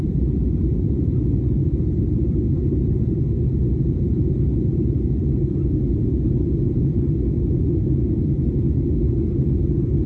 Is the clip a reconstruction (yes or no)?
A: no